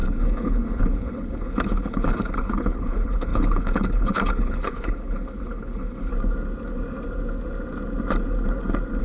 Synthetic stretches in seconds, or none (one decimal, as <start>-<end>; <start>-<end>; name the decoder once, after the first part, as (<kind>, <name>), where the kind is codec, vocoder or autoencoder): 0.0-6.1 (codec, HILCodec)